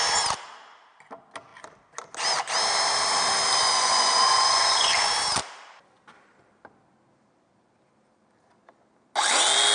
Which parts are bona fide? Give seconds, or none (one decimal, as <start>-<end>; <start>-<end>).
0.0-3.6; 5.1-9.7